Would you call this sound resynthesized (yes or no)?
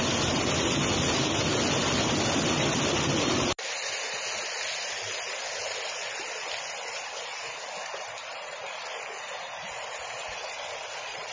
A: no